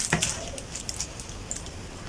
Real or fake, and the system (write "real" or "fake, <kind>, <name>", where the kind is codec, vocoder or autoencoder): real